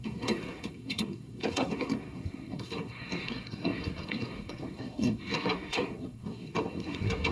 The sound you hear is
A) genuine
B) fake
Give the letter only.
B